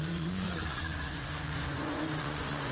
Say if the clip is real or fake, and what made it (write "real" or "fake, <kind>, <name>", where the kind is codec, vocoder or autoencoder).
fake, vocoder, Vocos